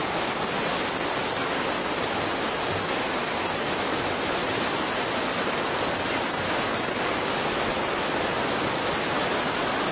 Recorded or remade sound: recorded